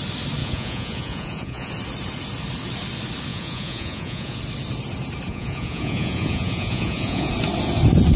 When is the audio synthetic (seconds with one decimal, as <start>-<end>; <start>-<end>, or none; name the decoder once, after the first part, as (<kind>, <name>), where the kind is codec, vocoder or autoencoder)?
0.4-1.7 (vocoder, Vocos); 3.3-4.4; 5.3-7.3

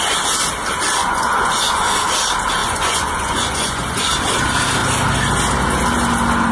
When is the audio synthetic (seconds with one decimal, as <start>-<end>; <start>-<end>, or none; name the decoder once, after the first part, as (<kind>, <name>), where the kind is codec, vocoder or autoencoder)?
1.0-2.0 (vocoder, Vocos); 2.6-4.1

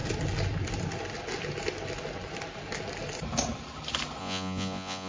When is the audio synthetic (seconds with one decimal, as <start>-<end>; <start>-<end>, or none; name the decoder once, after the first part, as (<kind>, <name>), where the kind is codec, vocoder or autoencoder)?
4.2-5.1 (vocoder, Vocos)